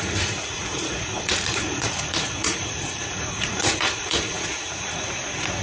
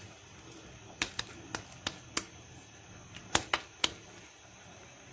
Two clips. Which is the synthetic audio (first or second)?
first